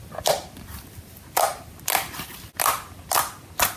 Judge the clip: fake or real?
real